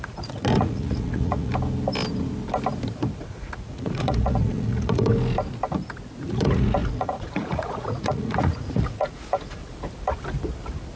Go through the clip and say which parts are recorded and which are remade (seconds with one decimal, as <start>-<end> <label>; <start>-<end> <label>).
0.0-1.5 remade; 1.5-3.1 recorded; 3.1-5.1 remade; 5.1-6.3 recorded; 6.3-9.6 remade; 9.6-11.0 recorded